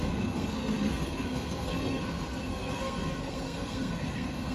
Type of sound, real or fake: fake